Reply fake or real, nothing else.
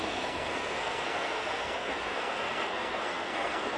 fake